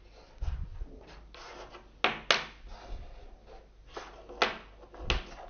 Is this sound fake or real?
real